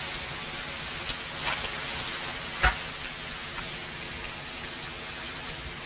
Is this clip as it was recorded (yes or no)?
yes